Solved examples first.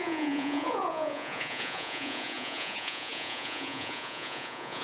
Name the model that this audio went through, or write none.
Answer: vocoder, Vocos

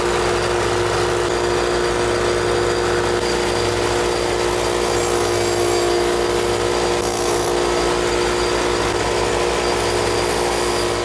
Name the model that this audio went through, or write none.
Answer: none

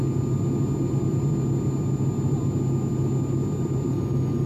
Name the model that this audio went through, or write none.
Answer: none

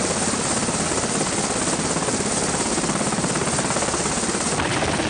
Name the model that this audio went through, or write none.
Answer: none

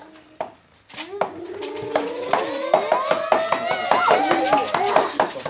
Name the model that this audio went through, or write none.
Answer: none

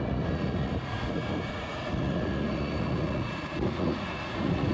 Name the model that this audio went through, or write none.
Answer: vocoder, Vocos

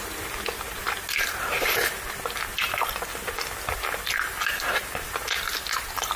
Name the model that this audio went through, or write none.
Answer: none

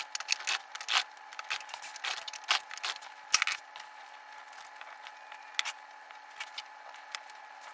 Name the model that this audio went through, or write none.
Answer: none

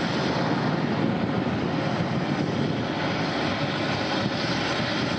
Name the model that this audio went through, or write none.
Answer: none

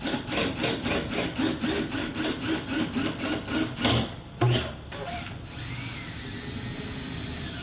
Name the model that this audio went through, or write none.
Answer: none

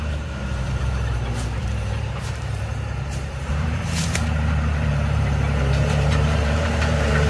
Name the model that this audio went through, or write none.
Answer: vocoder, BigVGAN v2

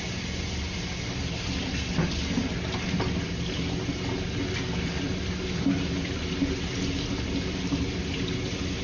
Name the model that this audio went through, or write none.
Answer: none